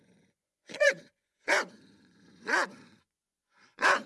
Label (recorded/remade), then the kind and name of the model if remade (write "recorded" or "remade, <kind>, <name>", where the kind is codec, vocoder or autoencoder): remade, vocoder, Vocos